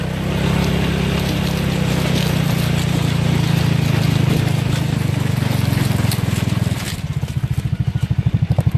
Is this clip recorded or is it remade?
recorded